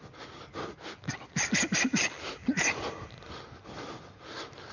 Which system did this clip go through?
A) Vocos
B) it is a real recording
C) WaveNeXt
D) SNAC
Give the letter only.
B